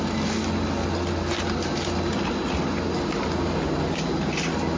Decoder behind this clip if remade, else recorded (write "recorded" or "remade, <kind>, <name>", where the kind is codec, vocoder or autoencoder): recorded